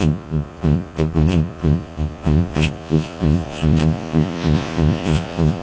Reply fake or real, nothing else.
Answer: fake